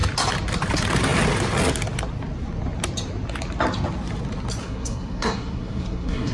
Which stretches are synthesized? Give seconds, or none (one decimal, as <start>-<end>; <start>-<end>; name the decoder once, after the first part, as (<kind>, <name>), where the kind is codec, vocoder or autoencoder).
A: 4.6-6.3 (codec, SNAC)